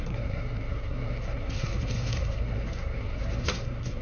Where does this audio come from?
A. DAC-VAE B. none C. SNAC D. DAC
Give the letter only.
C